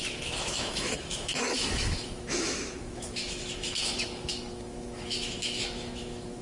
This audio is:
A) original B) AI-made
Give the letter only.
B